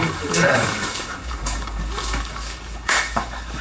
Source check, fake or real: fake